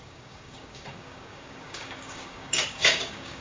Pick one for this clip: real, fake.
fake